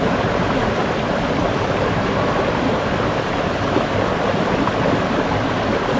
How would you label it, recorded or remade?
recorded